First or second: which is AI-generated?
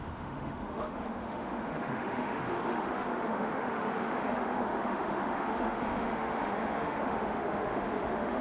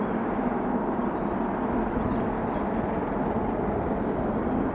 first